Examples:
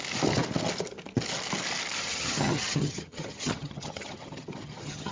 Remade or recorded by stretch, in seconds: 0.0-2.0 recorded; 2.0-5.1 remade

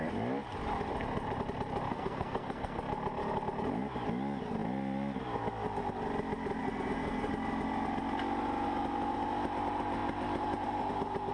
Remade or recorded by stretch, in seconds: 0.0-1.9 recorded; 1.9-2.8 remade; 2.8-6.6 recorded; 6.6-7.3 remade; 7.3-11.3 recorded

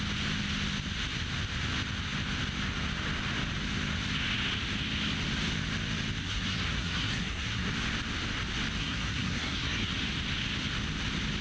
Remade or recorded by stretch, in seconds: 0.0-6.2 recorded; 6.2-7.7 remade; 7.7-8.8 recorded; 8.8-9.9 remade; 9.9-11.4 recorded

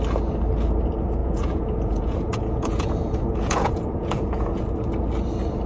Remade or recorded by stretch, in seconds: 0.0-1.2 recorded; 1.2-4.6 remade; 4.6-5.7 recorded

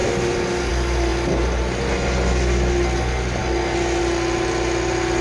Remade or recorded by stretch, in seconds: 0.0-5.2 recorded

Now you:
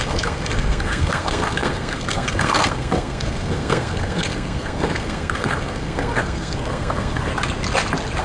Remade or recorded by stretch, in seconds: 0.0-7.3 remade; 7.3-8.2 recorded

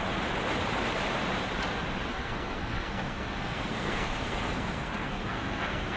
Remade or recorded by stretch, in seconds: 0.0-2.1 recorded; 2.1-6.0 remade

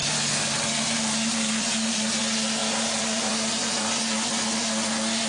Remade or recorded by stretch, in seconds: 0.0-2.2 remade; 2.2-2.6 recorded; 2.6-3.3 remade; 3.3-5.3 recorded